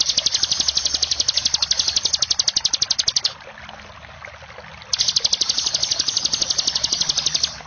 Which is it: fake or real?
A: real